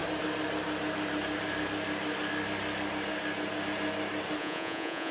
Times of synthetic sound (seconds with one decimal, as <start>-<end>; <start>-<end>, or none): 4.4-5.1